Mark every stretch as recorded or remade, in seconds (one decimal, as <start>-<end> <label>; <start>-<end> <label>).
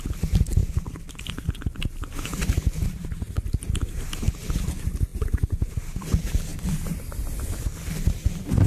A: 0.0-8.7 recorded